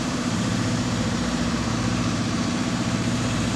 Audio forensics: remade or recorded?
remade